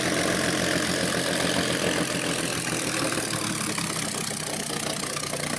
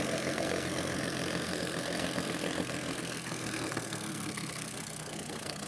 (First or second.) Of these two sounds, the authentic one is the first